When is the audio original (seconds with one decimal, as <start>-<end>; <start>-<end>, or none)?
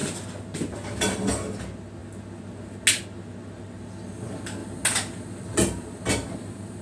0.0-6.8